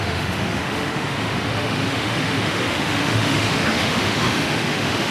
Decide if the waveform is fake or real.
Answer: fake